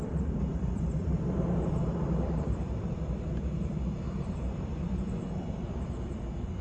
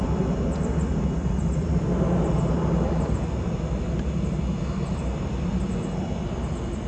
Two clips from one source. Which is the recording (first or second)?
second